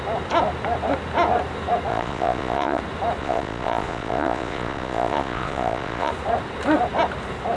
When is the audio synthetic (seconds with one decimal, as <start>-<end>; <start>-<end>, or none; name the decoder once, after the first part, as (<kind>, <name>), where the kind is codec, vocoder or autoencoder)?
1.9-2.8 (vocoder, Vocos); 3.2-6.1

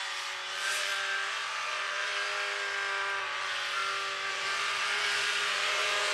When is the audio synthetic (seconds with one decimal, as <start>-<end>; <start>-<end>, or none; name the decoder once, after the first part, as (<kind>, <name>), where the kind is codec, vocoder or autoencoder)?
0.0-0.9 (vocoder, Vocos); 1.5-2.1; 3.2-3.8; 4.3-6.1

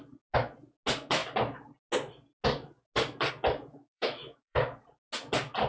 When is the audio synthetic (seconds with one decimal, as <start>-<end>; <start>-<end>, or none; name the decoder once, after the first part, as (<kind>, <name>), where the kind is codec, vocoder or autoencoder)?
3.7-4.6 (autoencoder, DAC-VAE)

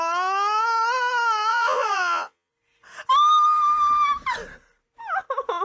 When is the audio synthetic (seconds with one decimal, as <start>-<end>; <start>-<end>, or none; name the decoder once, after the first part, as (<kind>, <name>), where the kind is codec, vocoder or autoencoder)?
1.5-2.5 (vocoder, Vocos)